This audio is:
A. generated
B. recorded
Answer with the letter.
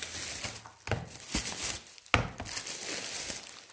B